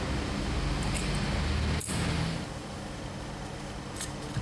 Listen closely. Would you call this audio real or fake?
real